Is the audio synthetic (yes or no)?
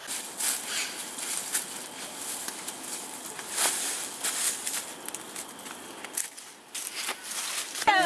no